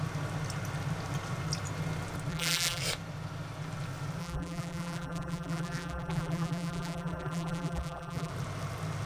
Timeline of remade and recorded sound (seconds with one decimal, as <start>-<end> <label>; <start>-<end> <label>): 0.0-2.3 recorded; 2.3-2.8 remade; 2.8-4.2 recorded; 4.2-8.3 remade; 8.3-9.1 recorded